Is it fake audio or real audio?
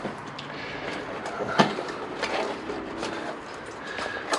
fake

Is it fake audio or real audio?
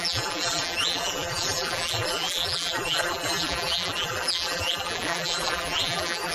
fake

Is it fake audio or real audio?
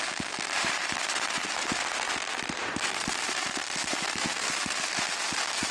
fake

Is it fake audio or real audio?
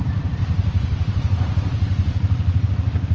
fake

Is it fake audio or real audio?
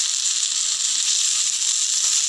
real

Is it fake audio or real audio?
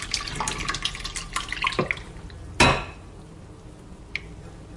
real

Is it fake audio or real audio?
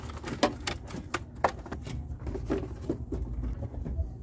real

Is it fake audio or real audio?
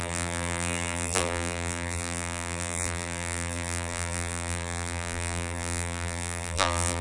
fake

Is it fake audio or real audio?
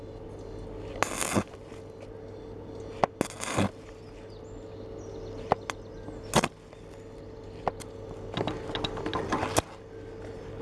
real